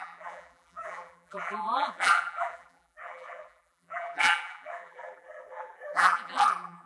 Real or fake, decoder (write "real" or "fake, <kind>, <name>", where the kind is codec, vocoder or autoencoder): fake, vocoder, BigVGAN v2